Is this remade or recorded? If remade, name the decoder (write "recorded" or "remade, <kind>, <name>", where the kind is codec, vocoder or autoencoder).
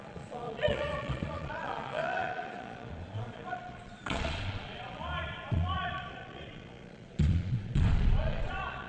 remade, vocoder, Vocos